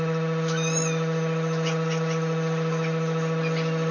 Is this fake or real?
real